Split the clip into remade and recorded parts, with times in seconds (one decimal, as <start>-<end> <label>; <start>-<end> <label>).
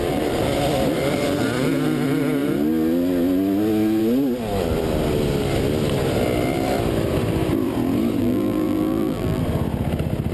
0.0-8.2 recorded; 8.2-9.4 remade; 9.4-10.3 recorded